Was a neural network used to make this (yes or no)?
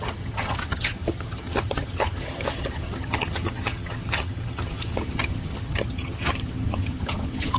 yes